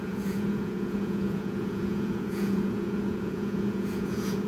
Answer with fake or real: fake